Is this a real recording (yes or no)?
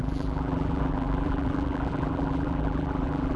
no